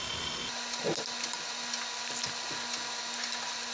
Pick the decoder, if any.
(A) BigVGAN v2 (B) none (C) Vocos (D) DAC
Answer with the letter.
B